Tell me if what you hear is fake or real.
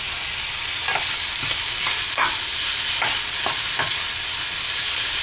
real